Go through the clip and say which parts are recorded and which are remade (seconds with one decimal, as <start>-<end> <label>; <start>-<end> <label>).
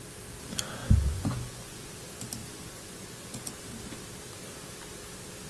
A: 0.0-0.8 recorded; 0.8-1.9 remade; 1.9-2.4 recorded; 2.4-3.5 remade; 3.5-5.5 recorded